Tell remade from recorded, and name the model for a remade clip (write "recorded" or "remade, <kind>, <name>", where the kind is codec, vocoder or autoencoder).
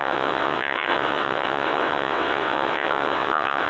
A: remade, vocoder, WaveNeXt